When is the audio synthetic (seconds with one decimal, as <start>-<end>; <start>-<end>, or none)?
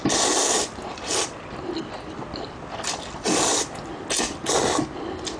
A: none